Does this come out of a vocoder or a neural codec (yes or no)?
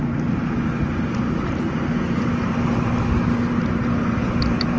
no